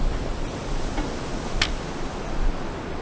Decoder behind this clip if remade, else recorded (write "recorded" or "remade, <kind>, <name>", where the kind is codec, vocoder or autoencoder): recorded